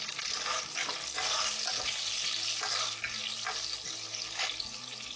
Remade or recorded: recorded